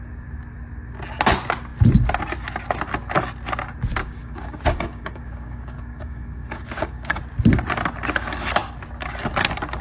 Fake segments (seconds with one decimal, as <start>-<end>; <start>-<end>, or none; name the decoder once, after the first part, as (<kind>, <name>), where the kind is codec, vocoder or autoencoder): 4.0-7.2 (codec, DAC)